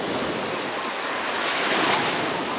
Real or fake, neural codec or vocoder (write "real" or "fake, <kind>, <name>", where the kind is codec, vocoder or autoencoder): real